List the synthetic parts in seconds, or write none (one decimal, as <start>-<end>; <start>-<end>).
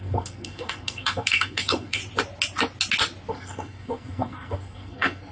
0.0-2.0; 3.3-5.3